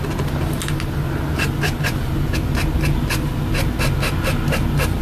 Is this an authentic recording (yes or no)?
yes